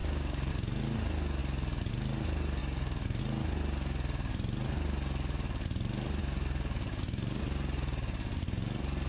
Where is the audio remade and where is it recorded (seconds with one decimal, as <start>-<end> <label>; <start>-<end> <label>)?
0.0-0.5 remade; 0.5-2.6 recorded; 2.6-3.2 remade; 3.2-6.2 recorded; 6.2-7.4 remade; 7.4-9.1 recorded